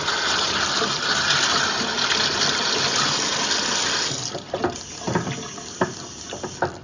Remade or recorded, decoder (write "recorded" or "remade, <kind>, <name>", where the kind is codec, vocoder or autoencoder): recorded